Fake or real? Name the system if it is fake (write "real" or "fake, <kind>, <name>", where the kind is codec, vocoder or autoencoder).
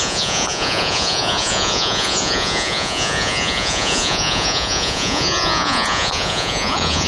fake, vocoder, Vocos